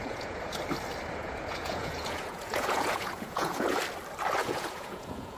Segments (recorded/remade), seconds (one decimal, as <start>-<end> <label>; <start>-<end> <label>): 0.0-0.6 remade; 0.6-1.2 recorded; 1.2-3.8 remade; 3.8-4.4 recorded; 4.4-5.4 remade